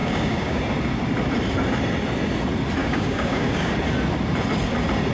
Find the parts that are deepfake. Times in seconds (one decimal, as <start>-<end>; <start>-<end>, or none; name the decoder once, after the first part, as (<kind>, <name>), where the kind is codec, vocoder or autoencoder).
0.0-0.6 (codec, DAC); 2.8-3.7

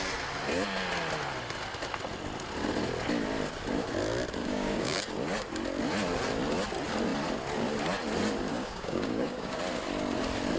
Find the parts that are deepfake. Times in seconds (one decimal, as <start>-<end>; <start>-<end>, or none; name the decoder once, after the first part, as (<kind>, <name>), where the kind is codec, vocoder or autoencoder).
4.4-5.0 (codec, DAC); 8.5-9.6

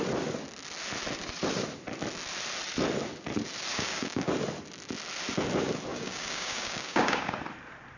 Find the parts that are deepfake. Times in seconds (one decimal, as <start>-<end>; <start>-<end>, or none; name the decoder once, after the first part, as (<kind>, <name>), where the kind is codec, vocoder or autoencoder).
3.7-4.3 (codec, DAC); 5.9-7.4

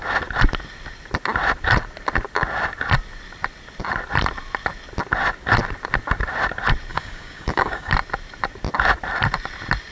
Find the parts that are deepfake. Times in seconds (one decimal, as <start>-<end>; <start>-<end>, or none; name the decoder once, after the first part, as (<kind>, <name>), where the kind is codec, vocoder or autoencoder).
6.9-7.9 (codec, DAC)

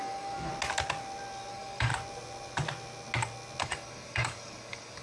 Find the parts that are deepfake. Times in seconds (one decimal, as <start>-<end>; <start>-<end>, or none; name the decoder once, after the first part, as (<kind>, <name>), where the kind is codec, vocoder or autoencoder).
0.0-0.5 (codec, DAC); 1.5-1.9; 3.6-5.0